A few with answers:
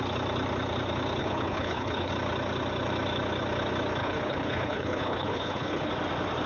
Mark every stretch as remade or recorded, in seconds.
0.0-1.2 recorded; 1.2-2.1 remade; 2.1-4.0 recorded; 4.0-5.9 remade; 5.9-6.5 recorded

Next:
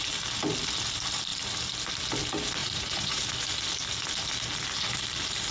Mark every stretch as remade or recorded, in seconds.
0.0-2.6 recorded; 2.6-3.2 remade; 3.2-5.5 recorded

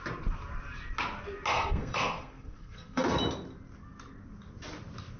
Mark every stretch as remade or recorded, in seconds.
0.0-1.5 recorded; 1.5-3.2 remade; 3.2-5.2 recorded

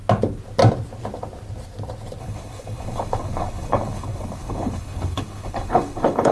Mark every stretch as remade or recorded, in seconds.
0.0-2.2 recorded; 2.2-6.3 remade

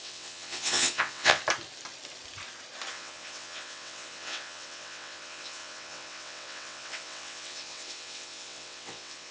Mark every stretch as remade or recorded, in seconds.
0.0-1.4 remade; 1.4-2.9 recorded; 2.9-9.3 remade

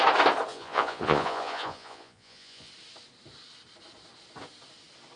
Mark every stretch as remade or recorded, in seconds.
0.0-0.5 recorded; 0.5-2.7 remade; 2.7-5.2 recorded